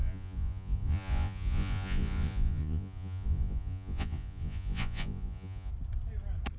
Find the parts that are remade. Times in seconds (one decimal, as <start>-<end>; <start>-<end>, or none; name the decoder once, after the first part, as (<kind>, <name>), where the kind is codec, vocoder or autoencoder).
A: 0.0-5.7 (vocoder, Vocos)